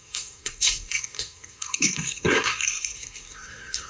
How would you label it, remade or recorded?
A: remade